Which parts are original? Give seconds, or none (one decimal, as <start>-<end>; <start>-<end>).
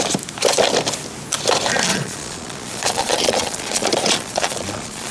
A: 0.0-1.9